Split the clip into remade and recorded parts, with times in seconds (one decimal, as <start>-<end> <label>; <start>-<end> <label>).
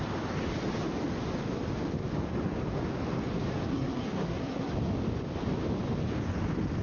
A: 0.0-3.7 recorded; 3.7-4.7 remade; 4.7-6.8 recorded